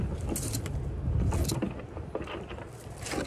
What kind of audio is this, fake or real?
real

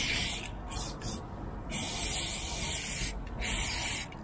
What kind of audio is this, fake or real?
real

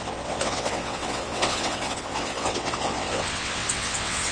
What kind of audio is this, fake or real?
fake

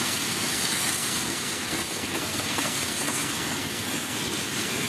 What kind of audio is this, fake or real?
fake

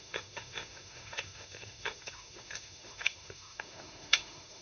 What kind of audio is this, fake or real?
fake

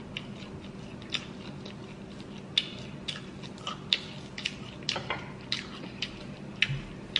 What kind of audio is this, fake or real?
real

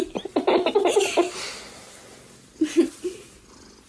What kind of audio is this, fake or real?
real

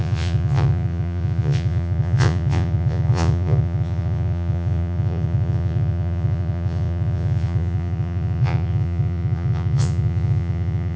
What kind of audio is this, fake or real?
fake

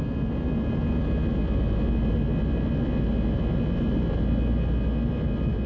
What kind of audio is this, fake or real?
real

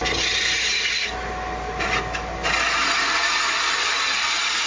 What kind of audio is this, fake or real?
real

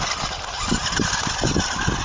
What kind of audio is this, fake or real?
fake